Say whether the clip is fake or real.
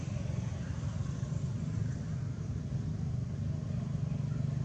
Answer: real